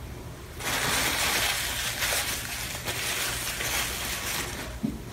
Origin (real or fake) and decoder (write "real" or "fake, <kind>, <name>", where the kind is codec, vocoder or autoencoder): real